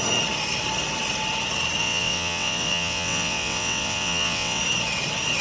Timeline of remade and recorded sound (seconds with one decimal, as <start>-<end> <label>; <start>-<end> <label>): 0.0-1.8 recorded; 1.8-4.6 remade; 4.6-5.4 recorded